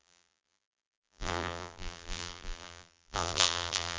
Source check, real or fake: fake